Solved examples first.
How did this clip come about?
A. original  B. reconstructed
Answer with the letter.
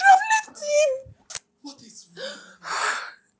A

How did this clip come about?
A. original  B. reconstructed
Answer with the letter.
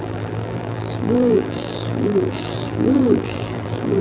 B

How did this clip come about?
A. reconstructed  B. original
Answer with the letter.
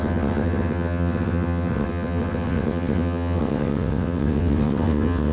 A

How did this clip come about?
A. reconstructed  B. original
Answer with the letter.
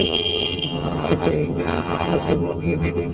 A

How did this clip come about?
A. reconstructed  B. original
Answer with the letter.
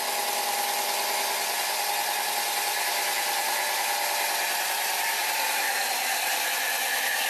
B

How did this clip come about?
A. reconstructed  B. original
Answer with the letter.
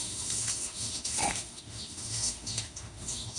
A